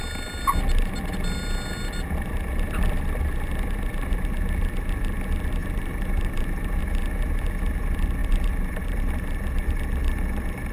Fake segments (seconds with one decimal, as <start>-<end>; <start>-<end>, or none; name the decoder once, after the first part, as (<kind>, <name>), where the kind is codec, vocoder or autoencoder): 5.6-6.8 (vocoder, BigVGAN v2); 8.2-9.0